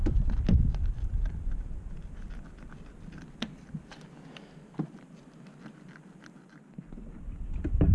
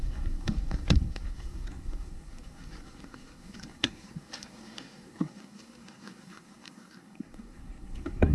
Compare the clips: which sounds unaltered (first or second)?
first